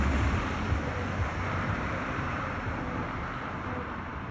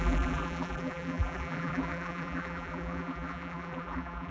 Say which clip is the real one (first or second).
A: first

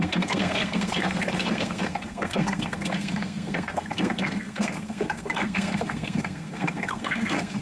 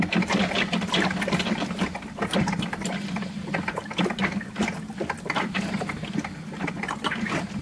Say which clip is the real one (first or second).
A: second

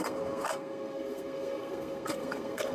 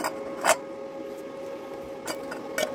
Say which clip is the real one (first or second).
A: second